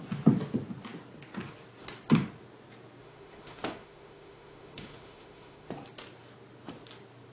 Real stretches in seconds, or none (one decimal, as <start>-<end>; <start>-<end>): 0.0-3.0; 5.7-7.3